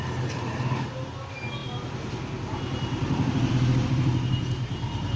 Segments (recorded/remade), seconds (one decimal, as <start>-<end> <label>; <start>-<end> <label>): 0.0-5.2 recorded